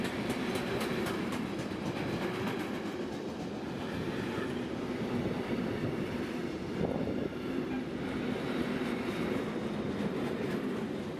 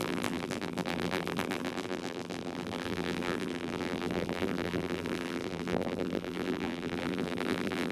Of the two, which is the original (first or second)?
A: first